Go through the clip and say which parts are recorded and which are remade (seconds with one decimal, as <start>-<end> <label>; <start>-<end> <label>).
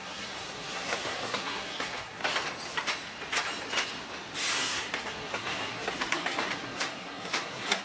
0.0-2.2 remade; 2.2-4.5 recorded; 4.5-7.8 remade